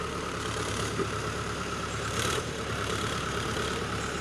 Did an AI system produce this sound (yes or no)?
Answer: yes